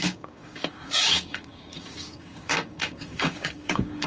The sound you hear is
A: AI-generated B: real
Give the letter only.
A